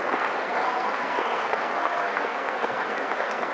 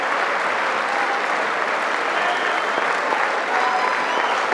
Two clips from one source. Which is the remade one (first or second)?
first